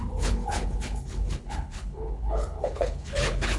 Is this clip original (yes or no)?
no